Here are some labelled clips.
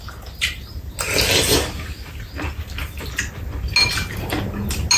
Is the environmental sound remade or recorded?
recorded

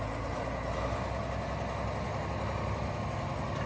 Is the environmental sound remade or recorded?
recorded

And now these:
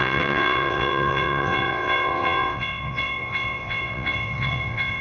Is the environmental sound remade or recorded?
remade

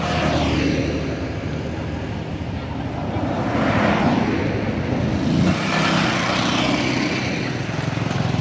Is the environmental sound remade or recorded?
recorded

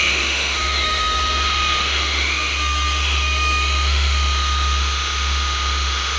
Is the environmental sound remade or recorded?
remade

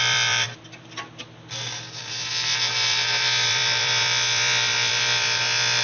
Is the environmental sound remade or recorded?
remade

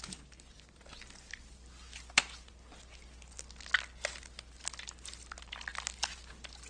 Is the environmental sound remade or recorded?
recorded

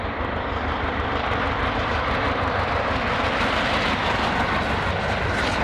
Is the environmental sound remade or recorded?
recorded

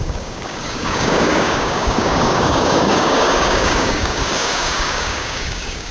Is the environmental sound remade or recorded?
remade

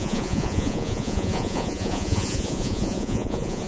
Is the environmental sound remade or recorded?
remade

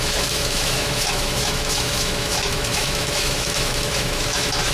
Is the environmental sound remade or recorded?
remade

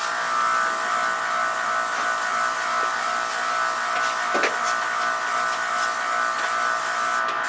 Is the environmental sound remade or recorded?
recorded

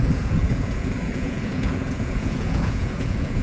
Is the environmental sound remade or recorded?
remade